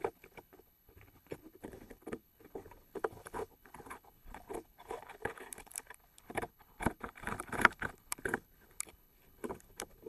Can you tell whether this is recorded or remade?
remade